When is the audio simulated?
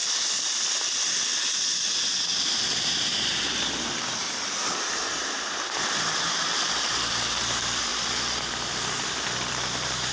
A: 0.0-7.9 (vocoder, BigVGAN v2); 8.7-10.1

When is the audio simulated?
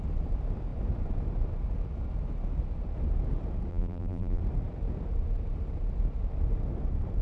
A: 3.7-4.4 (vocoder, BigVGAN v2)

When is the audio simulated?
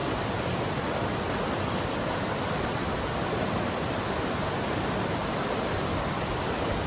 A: none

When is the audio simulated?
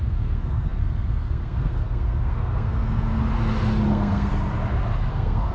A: 0.0-3.2 (codec, SNAC); 3.9-4.3; 5.1-5.5